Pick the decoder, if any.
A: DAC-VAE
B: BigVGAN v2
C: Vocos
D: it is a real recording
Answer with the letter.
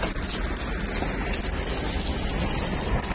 D